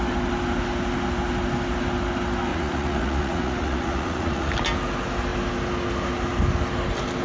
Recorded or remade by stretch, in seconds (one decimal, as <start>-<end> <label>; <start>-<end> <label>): 0.0-2.5 recorded; 2.5-4.5 remade; 4.5-7.2 recorded